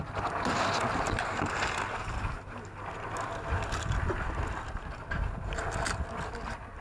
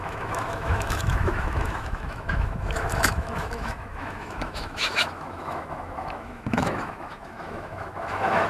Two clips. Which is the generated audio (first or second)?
second